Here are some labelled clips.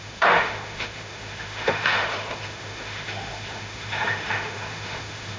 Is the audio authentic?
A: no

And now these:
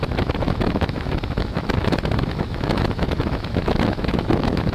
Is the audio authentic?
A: no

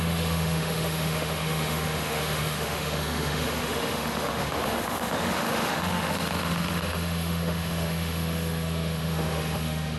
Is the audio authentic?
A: no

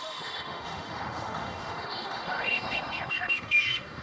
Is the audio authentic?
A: no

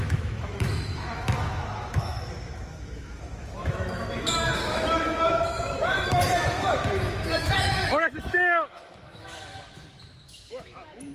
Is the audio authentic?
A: no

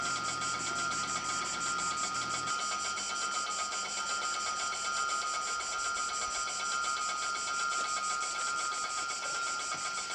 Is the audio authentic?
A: yes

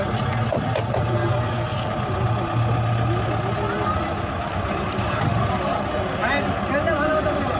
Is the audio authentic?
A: yes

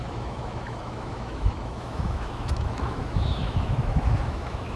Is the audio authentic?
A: no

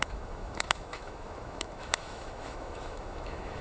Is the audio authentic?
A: no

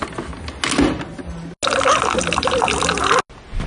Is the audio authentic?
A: yes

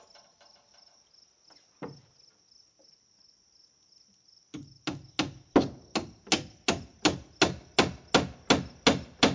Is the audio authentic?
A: yes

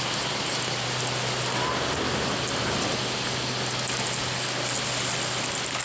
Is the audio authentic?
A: yes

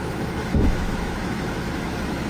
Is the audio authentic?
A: no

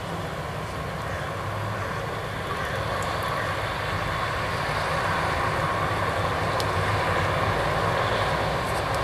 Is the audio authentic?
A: yes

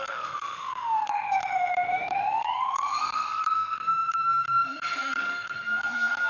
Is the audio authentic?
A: no